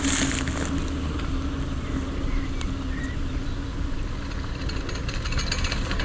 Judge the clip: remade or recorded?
recorded